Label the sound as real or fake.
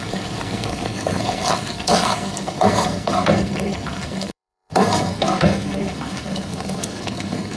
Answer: fake